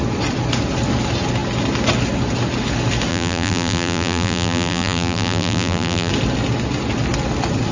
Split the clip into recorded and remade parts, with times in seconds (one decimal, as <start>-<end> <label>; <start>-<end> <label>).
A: 0.0-3.1 recorded; 3.1-6.1 remade; 6.1-7.7 recorded

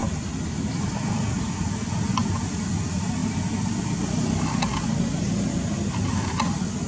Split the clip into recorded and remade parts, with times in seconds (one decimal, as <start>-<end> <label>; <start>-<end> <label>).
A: 0.0-6.9 recorded

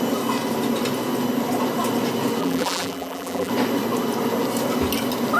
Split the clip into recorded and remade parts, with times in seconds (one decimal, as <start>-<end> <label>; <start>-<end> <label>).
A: 0.0-2.4 recorded; 2.4-3.5 remade; 3.5-5.4 recorded

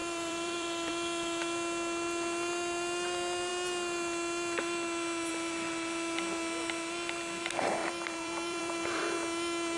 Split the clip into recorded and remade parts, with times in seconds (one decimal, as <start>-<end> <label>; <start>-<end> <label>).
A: 0.0-0.9 remade; 0.9-7.8 recorded; 7.8-9.0 remade; 9.0-9.8 recorded

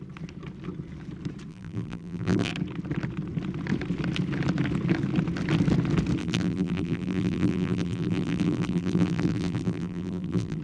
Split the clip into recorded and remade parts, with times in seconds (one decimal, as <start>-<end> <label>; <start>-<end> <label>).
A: 0.0-1.5 recorded; 1.5-2.5 remade; 2.5-6.2 recorded; 6.2-10.6 remade

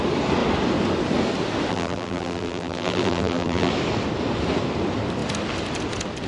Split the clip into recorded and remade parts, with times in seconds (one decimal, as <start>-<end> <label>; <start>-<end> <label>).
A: 0.0-1.7 recorded; 1.7-3.7 remade; 3.7-6.3 recorded

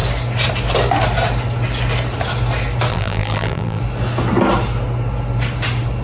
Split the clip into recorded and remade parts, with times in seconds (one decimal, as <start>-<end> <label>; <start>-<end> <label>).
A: 0.0-2.9 recorded; 2.9-3.8 remade; 3.8-6.0 recorded